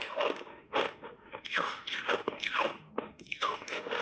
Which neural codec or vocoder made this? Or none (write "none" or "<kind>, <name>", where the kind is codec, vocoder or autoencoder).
autoencoder, DAC-VAE